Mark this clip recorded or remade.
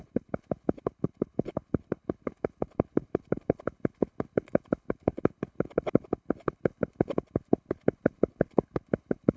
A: remade